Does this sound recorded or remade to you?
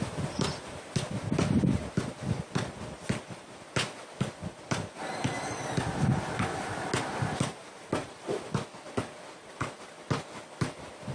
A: recorded